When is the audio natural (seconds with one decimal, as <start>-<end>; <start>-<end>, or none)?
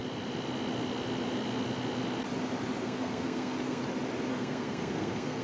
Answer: 0.0-2.8; 3.8-4.3